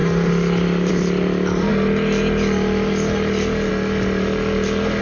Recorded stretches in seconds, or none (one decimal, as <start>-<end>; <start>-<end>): 0.0-5.0